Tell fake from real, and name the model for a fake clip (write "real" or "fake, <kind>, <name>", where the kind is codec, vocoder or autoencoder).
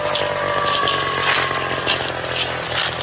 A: real